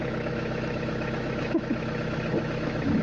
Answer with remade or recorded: remade